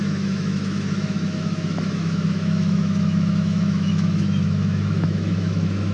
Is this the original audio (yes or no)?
no